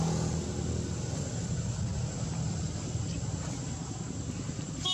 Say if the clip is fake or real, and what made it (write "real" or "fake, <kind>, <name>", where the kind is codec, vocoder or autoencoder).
real